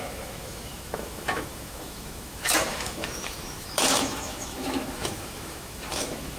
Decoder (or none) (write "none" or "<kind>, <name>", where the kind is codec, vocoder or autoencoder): autoencoder, DAC-VAE